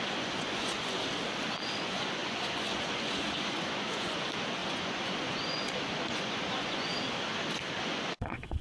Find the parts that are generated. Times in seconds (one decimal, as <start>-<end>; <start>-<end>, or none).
0.0-1.0; 1.7-6.9; 7.8-8.6